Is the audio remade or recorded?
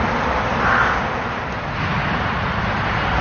recorded